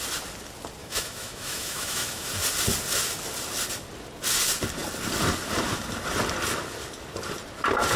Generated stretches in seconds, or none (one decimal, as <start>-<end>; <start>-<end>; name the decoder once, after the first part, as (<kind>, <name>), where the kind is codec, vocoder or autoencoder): 0.8-2.3 (autoencoder, DAC-VAE)